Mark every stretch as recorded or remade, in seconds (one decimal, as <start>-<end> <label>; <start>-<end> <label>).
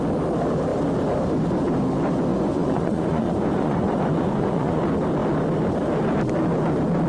0.0-2.3 recorded; 2.3-4.8 remade; 4.8-7.1 recorded